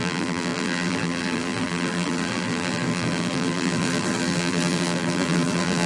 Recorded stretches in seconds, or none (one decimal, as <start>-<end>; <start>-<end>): none